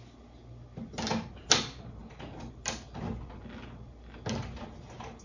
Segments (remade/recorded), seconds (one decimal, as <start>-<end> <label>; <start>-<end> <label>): 0.0-5.2 recorded